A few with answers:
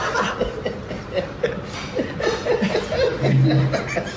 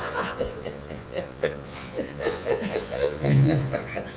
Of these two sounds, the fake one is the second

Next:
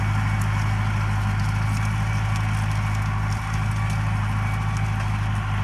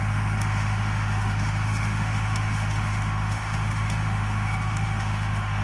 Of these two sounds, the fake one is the second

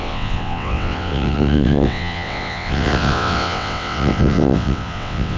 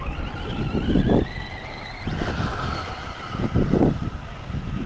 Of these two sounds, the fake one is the first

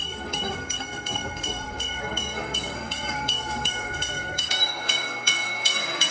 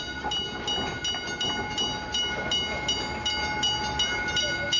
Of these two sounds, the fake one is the first